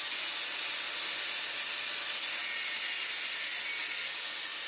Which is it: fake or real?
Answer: real